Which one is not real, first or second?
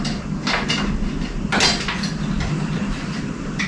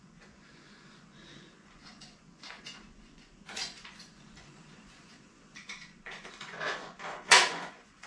second